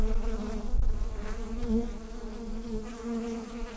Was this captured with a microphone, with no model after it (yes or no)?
yes